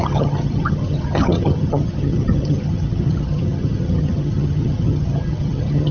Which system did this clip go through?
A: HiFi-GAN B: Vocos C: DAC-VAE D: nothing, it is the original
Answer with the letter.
A